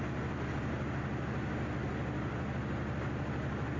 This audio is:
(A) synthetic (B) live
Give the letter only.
B